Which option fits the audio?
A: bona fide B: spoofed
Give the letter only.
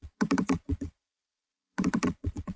B